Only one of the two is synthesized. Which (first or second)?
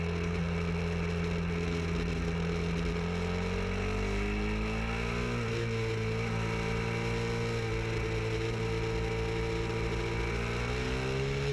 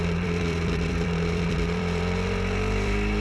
second